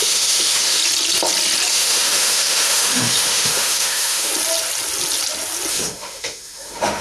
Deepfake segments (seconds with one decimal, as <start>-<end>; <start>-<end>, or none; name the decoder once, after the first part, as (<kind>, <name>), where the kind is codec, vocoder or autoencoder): 0.0-0.8 (autoencoder, DAC-VAE); 1.7-4.3; 5.7-7.0